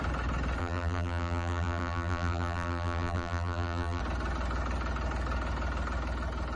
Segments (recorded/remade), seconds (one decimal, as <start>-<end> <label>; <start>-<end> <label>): 0.0-0.6 recorded; 0.6-4.0 remade; 4.0-6.6 recorded